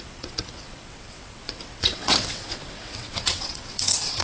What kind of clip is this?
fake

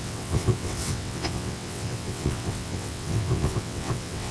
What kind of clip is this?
fake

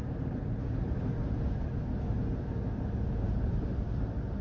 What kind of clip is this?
real